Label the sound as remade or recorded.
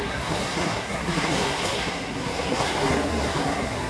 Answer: remade